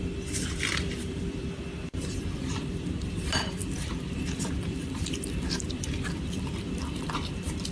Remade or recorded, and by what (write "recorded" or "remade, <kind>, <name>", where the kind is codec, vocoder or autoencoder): remade, vocoder, BigVGAN v2